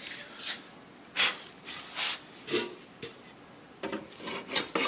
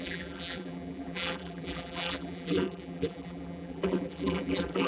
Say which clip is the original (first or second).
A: first